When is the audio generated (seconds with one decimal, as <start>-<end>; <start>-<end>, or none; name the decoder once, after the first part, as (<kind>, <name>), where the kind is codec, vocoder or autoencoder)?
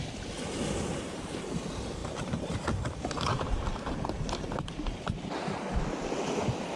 2.0-5.8 (vocoder, BigVGAN v2)